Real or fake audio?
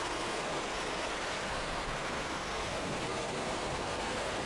fake